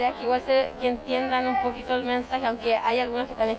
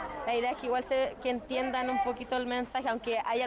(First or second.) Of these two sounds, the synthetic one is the first